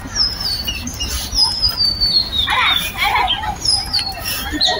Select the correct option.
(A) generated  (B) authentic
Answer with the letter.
A